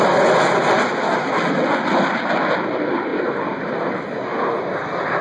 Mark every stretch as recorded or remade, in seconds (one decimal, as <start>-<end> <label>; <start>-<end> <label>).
0.0-5.2 recorded